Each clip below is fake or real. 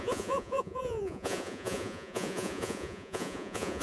fake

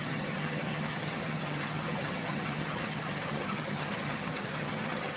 fake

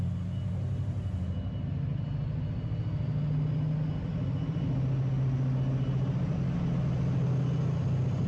real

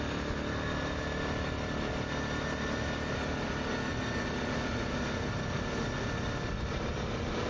real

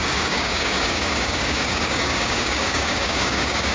fake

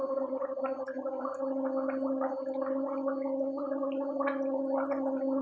real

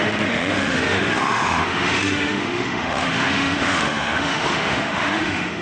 fake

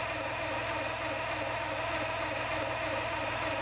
real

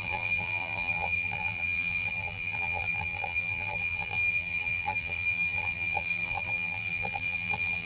fake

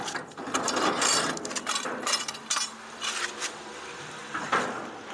real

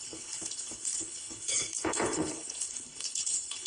fake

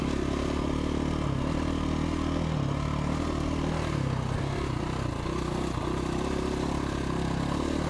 real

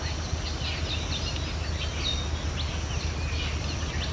real